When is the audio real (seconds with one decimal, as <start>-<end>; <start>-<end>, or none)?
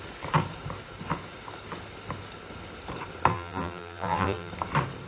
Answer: 0.0-3.3; 4.5-5.1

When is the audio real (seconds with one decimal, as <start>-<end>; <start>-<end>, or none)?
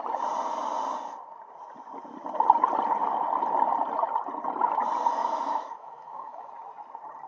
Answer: 0.0-5.2; 6.5-7.3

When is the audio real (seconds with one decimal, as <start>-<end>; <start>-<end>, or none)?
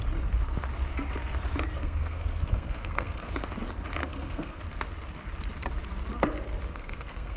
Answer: 0.0-1.8; 3.3-4.0; 4.6-6.7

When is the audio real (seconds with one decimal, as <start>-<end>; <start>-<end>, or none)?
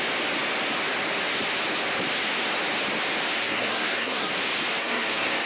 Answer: 0.0-3.4; 4.3-4.8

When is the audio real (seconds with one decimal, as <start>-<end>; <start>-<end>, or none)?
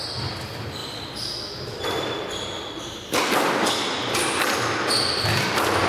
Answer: 0.0-0.8; 3.7-5.9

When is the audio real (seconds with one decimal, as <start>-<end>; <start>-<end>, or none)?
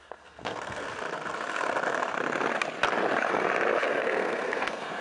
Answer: 0.8-3.8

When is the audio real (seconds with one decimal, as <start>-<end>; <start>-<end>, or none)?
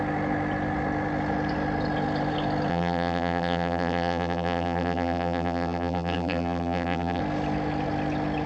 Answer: 0.0-2.7; 7.2-8.5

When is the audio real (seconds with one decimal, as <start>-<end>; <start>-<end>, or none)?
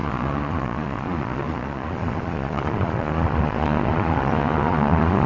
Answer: none